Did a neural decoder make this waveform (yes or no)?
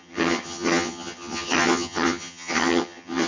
yes